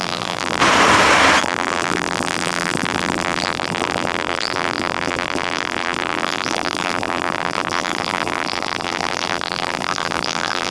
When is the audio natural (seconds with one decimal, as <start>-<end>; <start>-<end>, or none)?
0.6-1.4